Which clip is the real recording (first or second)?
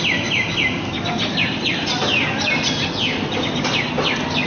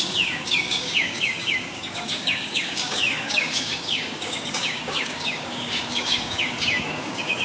first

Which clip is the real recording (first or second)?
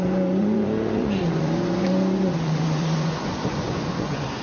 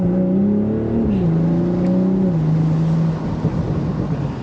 second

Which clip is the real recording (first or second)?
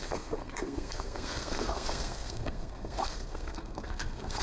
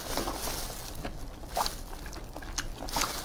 second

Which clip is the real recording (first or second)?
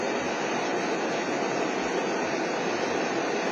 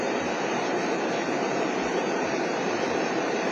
first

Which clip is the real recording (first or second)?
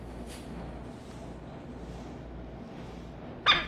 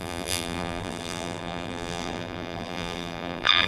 first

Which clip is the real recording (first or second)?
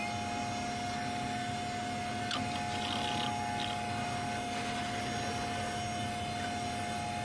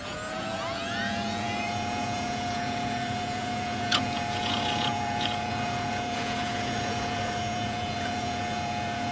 first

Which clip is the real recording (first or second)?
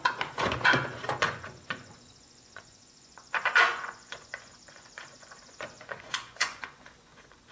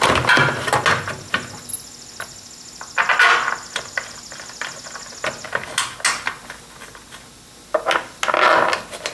second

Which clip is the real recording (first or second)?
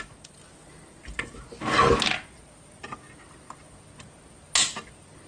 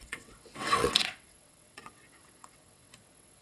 first